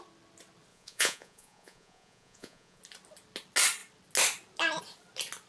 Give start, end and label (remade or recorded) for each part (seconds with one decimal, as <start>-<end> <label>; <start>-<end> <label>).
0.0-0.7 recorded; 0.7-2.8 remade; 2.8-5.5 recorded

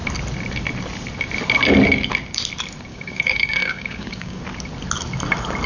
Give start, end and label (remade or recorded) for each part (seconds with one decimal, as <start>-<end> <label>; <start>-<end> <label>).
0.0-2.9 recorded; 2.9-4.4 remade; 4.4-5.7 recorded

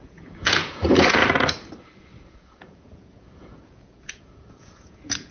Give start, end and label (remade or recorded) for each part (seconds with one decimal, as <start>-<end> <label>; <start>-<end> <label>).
0.0-1.2 remade; 1.2-1.8 recorded; 1.8-5.3 remade

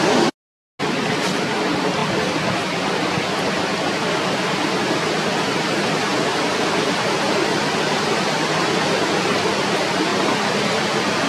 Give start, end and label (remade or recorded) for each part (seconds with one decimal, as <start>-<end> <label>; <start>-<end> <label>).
0.0-2.0 recorded; 2.0-4.1 remade; 4.1-11.3 recorded